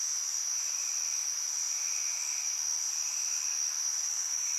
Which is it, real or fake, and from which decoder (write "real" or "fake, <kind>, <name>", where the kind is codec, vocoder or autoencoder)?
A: real